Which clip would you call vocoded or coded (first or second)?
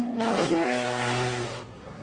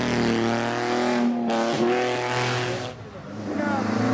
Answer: first